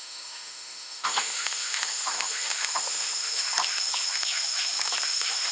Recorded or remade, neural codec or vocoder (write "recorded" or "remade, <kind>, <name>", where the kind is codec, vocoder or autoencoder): remade, autoencoder, DAC-VAE